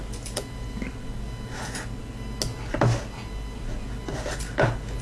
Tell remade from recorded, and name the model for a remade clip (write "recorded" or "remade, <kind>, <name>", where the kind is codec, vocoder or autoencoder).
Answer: recorded